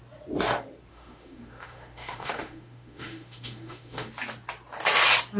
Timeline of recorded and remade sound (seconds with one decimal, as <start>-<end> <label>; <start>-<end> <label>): 0.0-0.9 recorded; 0.9-4.1 remade; 4.1-5.4 recorded